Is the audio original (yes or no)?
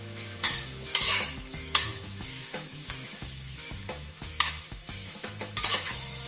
no